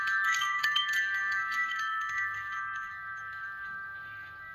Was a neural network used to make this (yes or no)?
yes